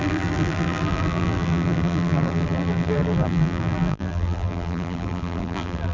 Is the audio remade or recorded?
remade